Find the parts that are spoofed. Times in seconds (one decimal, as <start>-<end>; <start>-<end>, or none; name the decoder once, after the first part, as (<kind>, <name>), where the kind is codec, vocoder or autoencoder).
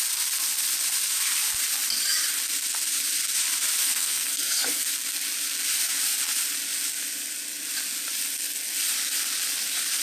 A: 3.8-4.9 (codec, SNAC)